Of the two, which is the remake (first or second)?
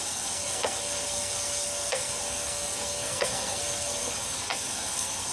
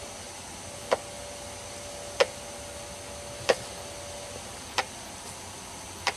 first